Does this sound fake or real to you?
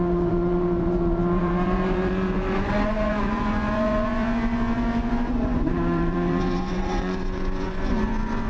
fake